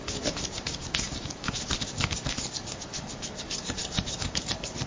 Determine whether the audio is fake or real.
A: fake